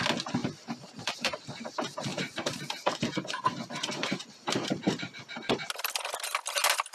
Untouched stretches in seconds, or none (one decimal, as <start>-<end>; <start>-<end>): 0.0-0.4; 1.7-2.1; 5.7-6.9